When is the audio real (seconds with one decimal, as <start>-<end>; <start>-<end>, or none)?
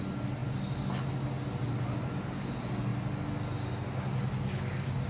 0.0-5.1